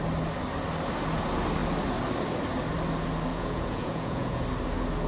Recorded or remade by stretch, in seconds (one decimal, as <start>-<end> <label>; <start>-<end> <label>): 0.0-3.3 recorded; 3.3-4.4 remade; 4.4-5.1 recorded